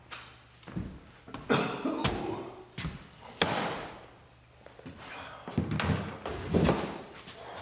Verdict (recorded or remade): recorded